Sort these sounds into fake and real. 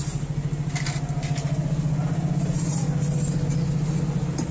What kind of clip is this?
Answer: real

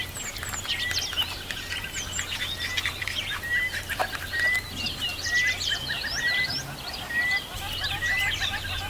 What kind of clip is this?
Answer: real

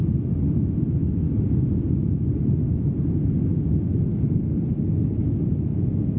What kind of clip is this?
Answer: real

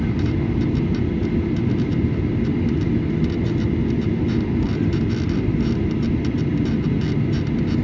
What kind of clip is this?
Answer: real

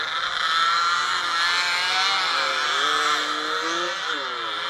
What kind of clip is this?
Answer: real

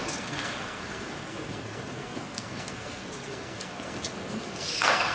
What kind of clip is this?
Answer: fake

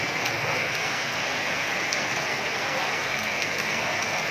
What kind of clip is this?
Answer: fake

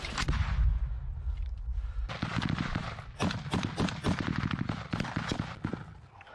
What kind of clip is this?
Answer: real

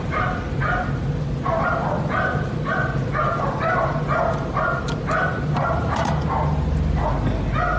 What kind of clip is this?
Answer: real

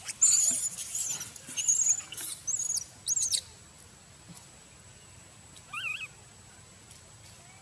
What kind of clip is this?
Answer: real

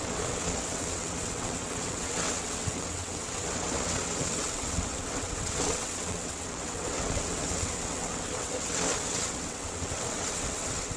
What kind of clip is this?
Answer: fake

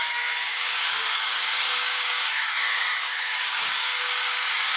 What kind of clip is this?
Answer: fake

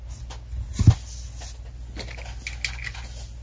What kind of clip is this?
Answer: real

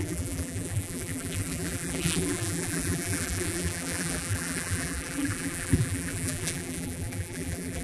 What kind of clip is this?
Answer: fake